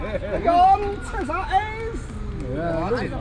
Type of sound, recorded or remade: recorded